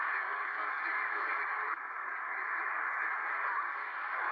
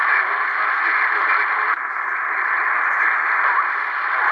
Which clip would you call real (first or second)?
second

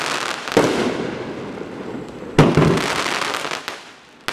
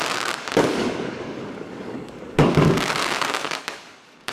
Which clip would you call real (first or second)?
first